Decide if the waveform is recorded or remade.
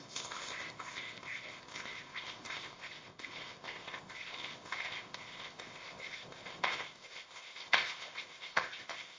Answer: remade